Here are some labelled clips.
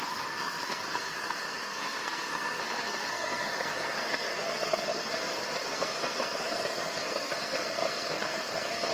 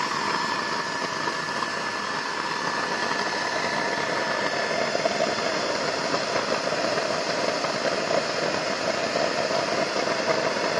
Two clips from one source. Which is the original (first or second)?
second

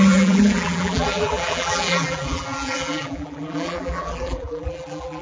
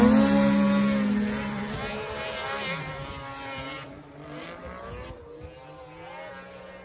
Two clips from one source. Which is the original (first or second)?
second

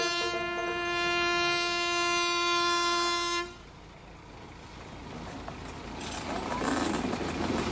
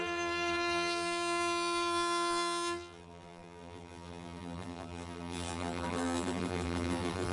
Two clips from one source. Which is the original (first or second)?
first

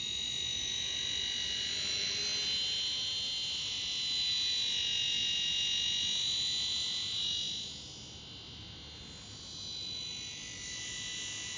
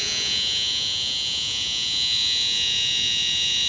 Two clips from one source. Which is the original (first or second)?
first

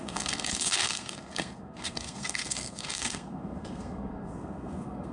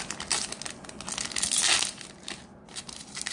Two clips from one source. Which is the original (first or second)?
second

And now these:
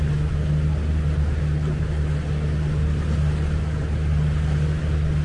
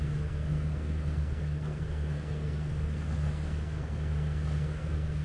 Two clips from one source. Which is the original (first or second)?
first